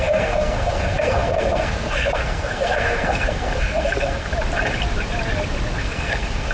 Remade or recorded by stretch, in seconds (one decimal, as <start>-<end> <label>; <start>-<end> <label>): 0.0-4.3 remade; 4.3-5.8 recorded; 5.8-6.5 remade